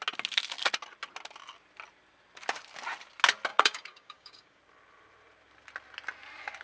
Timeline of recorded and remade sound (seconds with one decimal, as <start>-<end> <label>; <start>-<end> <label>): 0.0-3.5 recorded; 3.5-4.6 remade; 4.6-6.6 recorded